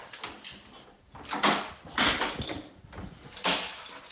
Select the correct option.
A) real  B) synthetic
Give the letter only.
A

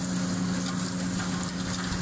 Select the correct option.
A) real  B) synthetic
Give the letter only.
A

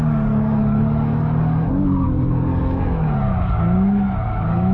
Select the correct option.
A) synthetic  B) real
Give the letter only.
A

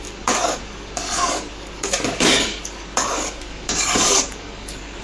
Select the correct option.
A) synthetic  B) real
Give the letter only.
A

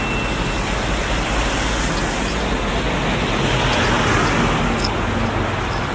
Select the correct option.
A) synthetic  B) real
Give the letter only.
B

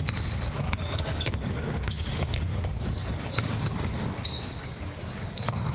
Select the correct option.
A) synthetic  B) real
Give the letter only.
A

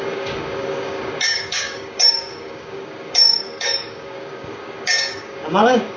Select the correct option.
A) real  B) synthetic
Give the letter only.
B